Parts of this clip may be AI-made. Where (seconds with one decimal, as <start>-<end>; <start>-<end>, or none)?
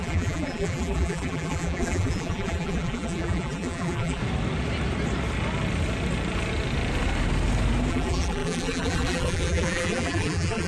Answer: 0.0-4.2; 7.9-10.7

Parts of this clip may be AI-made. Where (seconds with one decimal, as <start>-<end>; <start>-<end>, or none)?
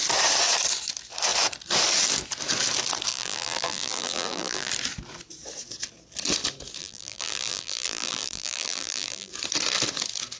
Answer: 3.1-4.7; 6.8-9.3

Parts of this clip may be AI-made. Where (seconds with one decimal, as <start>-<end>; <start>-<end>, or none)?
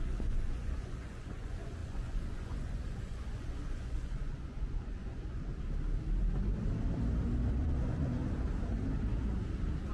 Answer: 0.0-5.5; 7.6-8.2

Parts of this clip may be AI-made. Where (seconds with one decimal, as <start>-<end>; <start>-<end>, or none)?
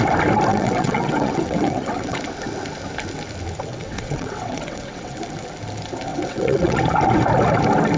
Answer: 0.5-2.2; 3.7-5.2; 6.1-6.8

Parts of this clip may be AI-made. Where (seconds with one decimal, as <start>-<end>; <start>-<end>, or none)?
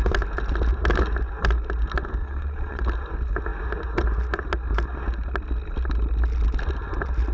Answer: 2.2-2.8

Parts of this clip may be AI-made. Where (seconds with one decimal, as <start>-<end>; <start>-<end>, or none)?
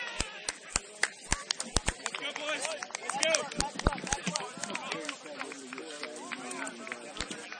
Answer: none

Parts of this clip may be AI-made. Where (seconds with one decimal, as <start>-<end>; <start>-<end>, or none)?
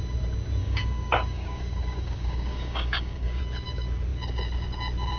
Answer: 0.6-3.4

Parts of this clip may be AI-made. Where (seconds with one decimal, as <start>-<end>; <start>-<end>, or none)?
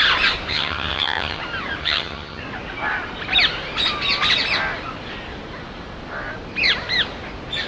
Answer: 0.5-1.4; 1.8-2.4